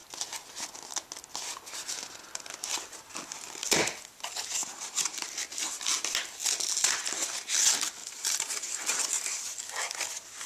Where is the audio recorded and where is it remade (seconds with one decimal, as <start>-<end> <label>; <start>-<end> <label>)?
0.0-4.6 recorded; 4.6-5.2 remade; 5.2-8.0 recorded; 8.0-9.6 remade; 9.6-10.5 recorded